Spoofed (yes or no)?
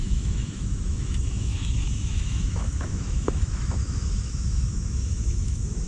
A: yes